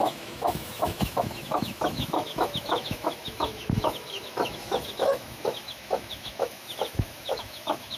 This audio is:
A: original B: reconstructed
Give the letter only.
B